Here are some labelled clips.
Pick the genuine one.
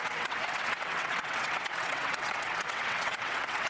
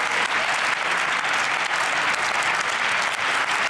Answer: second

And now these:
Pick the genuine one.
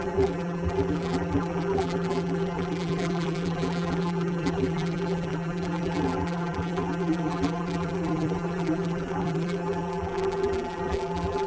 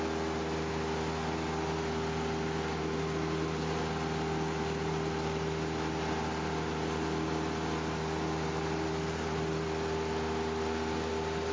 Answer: second